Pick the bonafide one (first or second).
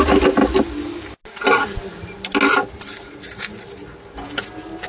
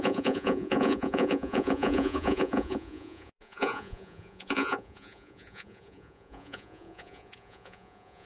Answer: first